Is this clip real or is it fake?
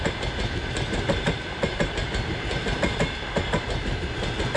real